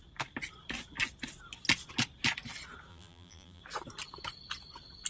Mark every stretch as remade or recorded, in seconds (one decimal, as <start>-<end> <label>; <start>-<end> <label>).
0.0-2.9 recorded; 2.9-3.6 remade; 3.6-5.1 recorded

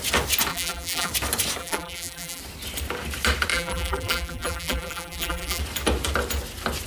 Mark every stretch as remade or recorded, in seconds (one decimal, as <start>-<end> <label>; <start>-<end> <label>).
0.0-0.5 recorded; 0.5-1.1 remade; 1.1-1.6 recorded; 1.6-2.4 remade; 2.4-3.5 recorded; 3.5-5.6 remade; 5.6-6.9 recorded

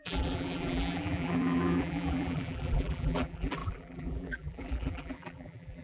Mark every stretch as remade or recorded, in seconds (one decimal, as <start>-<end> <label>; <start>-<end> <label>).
0.0-5.8 remade

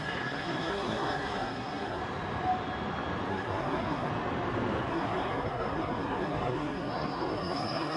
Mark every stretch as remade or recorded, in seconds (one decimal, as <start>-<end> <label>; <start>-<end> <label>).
0.0-2.0 remade; 2.0-3.3 recorded; 3.3-4.1 remade; 4.1-4.9 recorded; 4.9-8.0 remade

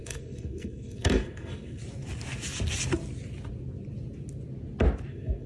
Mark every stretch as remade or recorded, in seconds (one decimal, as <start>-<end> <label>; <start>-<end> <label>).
0.0-1.8 remade; 1.8-5.1 recorded; 5.1-5.5 remade

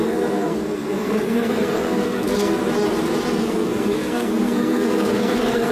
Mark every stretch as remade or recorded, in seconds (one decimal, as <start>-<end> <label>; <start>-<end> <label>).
0.0-2.6 remade; 2.6-3.4 recorded; 3.4-5.7 remade

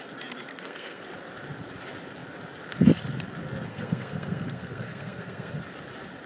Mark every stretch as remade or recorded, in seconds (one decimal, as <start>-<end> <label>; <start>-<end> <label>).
0.0-0.5 recorded; 0.5-1.0 remade; 1.0-3.7 recorded; 3.7-5.6 remade; 5.6-6.3 recorded

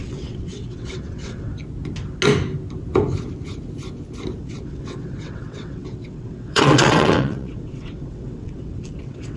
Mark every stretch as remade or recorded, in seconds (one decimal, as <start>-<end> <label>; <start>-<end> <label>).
0.0-1.5 remade; 1.5-4.4 recorded; 4.4-9.4 remade